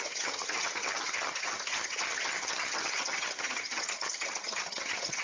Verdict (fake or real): fake